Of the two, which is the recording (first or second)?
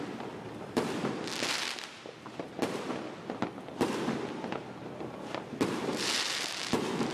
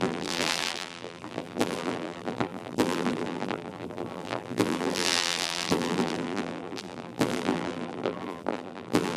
first